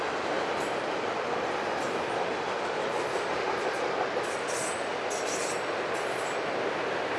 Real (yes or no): yes